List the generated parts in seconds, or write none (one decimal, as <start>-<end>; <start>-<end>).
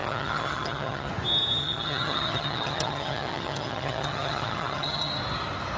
0.0-1.1; 1.6-5.1